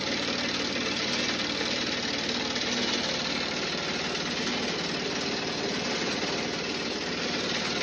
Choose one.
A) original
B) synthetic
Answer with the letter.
A